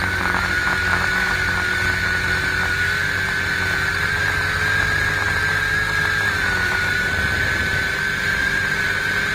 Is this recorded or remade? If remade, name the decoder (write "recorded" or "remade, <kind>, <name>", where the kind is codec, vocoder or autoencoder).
recorded